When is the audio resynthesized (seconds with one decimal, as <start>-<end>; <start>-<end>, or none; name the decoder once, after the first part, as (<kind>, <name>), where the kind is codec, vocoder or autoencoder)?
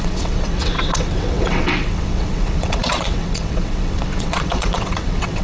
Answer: 0.0-5.4 (vocoder, WaveNeXt)